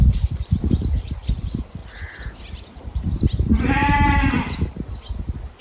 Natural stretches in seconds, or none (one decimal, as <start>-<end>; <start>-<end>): 1.8-5.6